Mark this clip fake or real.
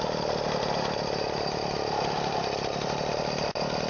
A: real